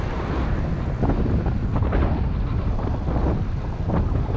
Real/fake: real